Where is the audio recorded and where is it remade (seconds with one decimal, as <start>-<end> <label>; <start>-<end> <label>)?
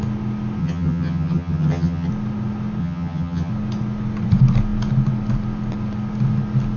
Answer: 0.0-0.6 recorded; 0.6-2.1 remade; 2.1-2.8 recorded; 2.8-3.5 remade; 3.5-6.8 recorded